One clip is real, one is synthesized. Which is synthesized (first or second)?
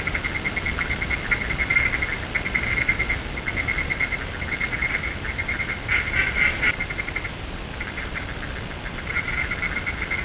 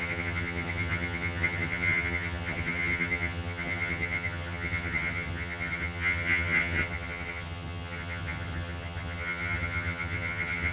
second